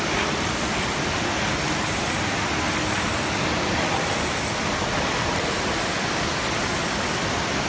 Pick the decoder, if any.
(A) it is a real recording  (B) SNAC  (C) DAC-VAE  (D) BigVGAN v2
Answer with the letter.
A